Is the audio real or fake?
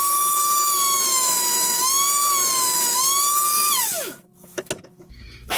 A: fake